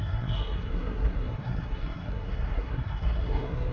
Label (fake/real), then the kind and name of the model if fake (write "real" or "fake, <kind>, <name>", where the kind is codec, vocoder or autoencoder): fake, codec, SNAC